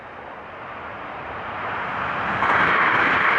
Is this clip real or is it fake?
real